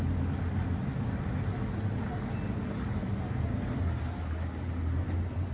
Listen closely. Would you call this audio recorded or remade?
recorded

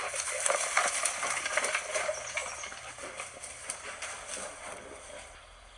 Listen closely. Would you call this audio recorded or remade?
recorded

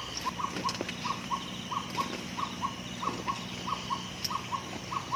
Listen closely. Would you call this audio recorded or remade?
recorded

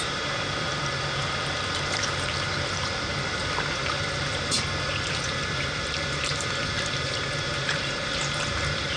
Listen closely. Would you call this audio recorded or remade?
remade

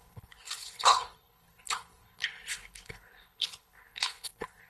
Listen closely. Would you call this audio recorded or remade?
remade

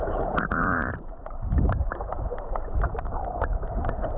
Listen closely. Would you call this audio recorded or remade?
remade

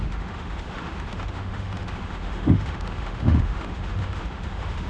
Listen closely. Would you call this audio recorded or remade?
remade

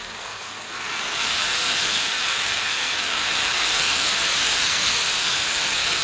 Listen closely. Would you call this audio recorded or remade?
remade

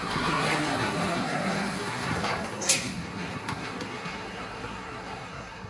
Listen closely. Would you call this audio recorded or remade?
remade